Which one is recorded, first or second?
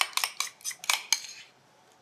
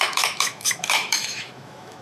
first